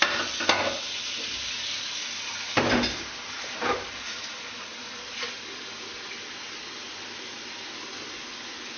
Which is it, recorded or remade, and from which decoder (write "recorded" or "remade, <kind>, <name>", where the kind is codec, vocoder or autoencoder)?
recorded